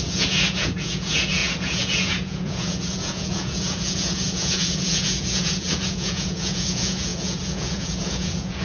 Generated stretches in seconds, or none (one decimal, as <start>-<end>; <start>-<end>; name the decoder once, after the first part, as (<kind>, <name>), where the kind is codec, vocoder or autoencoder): 0.0-8.6 (vocoder, Vocos)